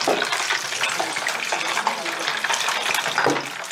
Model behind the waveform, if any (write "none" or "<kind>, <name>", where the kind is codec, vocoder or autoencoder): none